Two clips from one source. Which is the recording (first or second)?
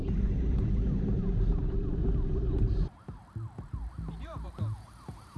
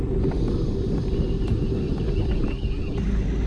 second